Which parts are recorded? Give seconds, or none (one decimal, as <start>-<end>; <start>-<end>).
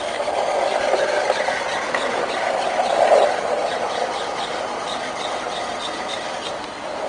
1.7-2.5